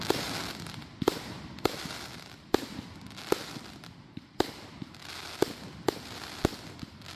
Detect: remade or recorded recorded